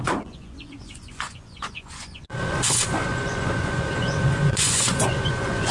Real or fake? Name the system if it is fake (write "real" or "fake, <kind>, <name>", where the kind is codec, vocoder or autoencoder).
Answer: fake, vocoder, Vocos